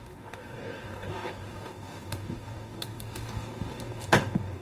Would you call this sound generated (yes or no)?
yes